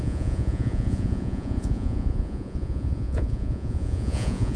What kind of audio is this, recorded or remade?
remade